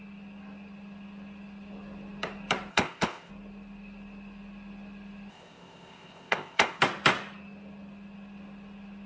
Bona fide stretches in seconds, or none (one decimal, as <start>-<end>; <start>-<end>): 0.0-2.7; 3.3-5.3; 6.8-9.1